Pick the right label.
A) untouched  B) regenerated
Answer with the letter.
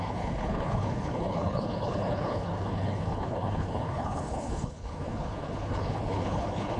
B